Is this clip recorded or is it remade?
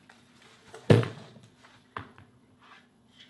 remade